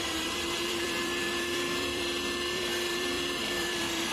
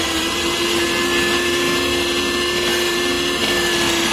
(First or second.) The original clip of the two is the second